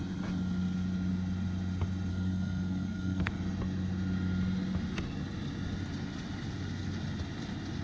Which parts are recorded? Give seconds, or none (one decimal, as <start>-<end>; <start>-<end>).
0.0-2.1; 3.3-7.8